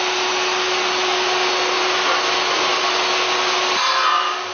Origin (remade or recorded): recorded